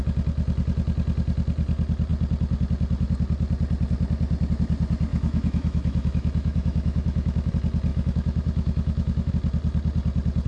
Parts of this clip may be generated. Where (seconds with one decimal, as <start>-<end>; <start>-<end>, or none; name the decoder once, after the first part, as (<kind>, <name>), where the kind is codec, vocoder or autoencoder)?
5.1-7.5 (autoencoder, DAC-VAE); 7.9-9.3